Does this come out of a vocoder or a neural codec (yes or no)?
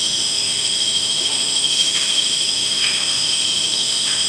yes